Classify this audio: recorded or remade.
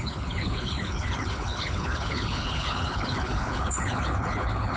remade